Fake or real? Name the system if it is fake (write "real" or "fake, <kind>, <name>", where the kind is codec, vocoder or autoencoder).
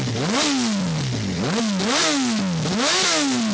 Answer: real